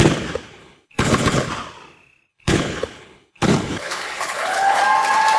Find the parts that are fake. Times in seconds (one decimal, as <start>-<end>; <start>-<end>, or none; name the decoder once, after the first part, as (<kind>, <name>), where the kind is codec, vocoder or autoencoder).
0.6-1.5 (codec, HILCodec); 2.3-4.8